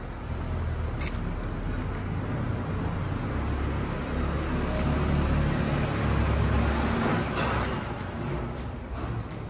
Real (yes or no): yes